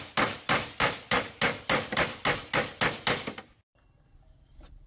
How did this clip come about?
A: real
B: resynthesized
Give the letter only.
A